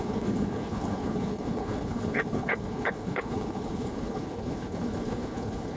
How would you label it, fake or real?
fake